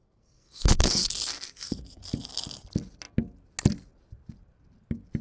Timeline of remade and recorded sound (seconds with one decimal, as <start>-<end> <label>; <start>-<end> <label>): 0.0-2.0 remade; 2.0-5.2 recorded